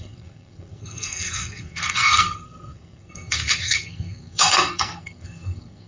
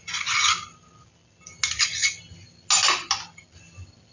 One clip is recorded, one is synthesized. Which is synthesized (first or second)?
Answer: first